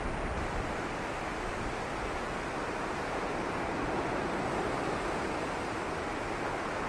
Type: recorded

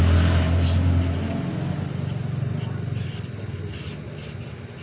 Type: recorded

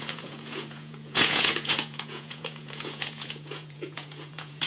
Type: remade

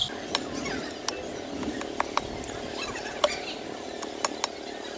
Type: recorded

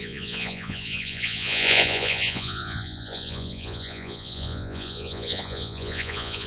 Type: remade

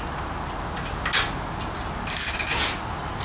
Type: recorded